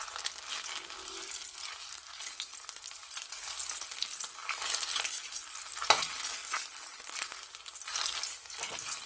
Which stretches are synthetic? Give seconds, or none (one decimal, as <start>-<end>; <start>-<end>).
none